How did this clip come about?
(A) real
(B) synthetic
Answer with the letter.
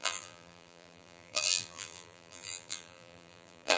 B